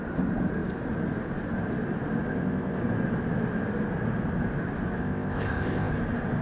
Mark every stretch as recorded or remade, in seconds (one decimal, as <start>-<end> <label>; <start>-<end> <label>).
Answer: 0.0-2.3 recorded; 2.3-2.8 remade; 2.8-5.0 recorded; 5.0-5.9 remade; 5.9-6.4 recorded